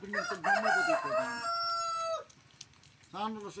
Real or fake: real